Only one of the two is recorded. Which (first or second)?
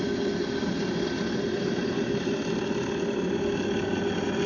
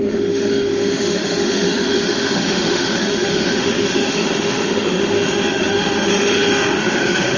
first